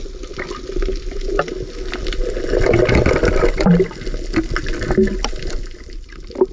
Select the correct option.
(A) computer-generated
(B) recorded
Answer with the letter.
B